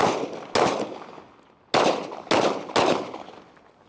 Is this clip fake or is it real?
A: real